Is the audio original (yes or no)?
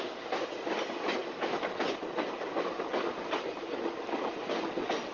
yes